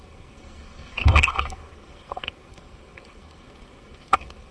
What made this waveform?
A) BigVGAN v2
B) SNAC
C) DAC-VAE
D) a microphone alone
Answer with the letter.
B